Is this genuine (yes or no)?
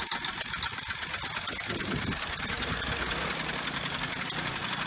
yes